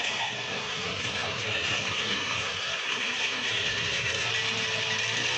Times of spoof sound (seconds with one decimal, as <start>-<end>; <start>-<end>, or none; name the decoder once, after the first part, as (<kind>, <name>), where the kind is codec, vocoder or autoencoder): 0.0-4.3 (codec, SNAC)